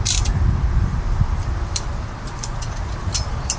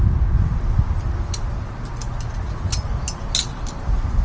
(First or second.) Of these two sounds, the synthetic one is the first